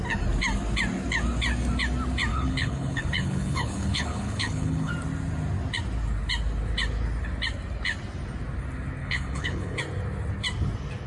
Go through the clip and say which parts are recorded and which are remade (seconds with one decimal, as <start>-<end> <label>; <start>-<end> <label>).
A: 0.0-2.3 recorded; 2.3-4.9 remade; 4.9-9.0 recorded; 9.0-9.8 remade; 9.8-11.1 recorded